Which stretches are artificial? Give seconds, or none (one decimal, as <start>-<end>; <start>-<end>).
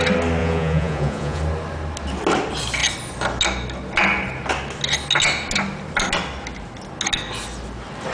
0.4-1.4